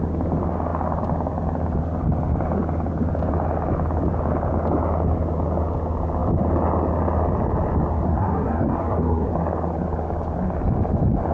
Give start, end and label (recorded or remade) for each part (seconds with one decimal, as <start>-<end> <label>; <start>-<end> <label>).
0.0-7.9 recorded; 7.9-9.3 remade; 9.3-11.3 recorded